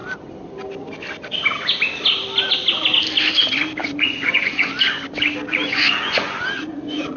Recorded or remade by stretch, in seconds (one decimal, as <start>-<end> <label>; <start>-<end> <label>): 0.0-3.8 recorded; 3.8-4.7 remade; 4.7-5.5 recorded; 5.5-7.2 remade